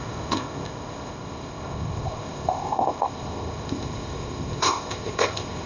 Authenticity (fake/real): fake